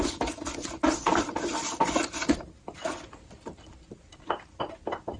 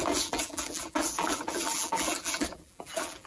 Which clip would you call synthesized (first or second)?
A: second